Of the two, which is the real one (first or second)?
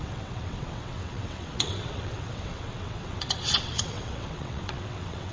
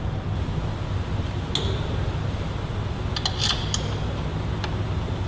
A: second